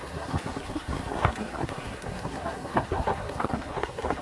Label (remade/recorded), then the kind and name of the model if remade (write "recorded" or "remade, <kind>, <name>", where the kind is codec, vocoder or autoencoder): remade, codec, SNAC